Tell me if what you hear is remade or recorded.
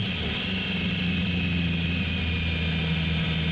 recorded